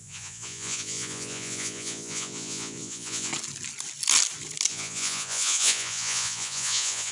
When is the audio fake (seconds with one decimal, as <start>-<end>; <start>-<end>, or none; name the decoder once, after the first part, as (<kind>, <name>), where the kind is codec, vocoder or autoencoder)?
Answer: 0.0-3.3 (vocoder, Vocos); 4.7-7.1

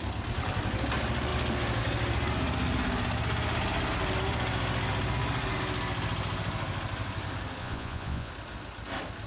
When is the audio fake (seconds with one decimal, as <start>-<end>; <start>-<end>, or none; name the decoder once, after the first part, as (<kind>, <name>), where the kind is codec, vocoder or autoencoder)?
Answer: 7.6-8.3 (vocoder, Vocos)